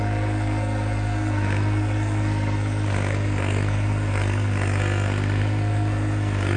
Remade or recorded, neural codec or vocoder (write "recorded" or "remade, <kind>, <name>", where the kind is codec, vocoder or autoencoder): remade, codec, SNAC